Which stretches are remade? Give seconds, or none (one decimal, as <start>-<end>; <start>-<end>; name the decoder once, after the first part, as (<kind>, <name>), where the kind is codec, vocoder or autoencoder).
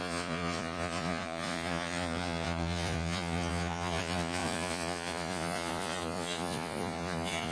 0.0-7.5 (vocoder, Vocos)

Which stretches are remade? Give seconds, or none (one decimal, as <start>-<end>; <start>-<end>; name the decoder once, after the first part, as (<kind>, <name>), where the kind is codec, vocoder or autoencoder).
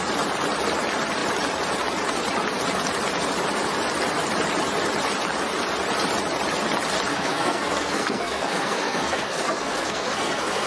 7.1-10.7 (codec, SNAC)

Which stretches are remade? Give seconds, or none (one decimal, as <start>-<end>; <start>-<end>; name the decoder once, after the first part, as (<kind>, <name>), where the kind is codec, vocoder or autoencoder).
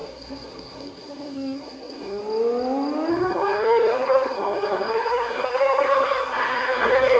0.0-2.2 (codec, SNAC); 3.1-7.2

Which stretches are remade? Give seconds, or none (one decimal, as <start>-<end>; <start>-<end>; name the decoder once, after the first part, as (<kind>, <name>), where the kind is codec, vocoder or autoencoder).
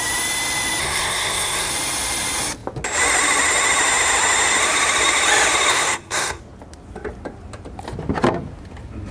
0.8-1.7 (codec, SNAC); 5.7-6.4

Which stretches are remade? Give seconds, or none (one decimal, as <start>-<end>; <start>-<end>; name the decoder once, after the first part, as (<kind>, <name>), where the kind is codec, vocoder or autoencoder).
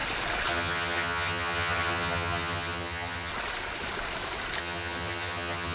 0.5-3.3 (vocoder, HiFi-GAN); 4.6-5.7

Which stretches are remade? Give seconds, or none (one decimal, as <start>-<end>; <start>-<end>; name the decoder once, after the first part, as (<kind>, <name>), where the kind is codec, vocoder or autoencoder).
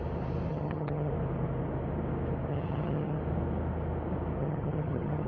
0.5-1.1 (vocoder, HiFi-GAN); 2.5-3.2; 4.4-5.3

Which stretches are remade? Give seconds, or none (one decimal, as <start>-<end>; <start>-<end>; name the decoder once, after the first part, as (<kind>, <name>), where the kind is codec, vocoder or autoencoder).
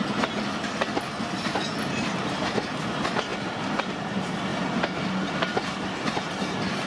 none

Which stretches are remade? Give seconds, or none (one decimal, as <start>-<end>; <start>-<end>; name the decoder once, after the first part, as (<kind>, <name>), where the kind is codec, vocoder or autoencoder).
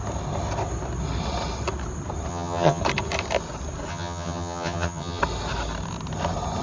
2.3-2.8 (vocoder, HiFi-GAN); 3.9-5.2